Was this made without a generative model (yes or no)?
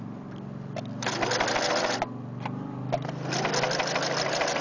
yes